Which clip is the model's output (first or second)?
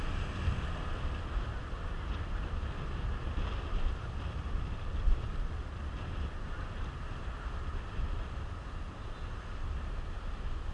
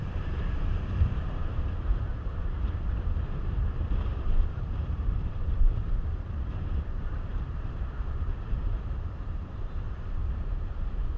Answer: second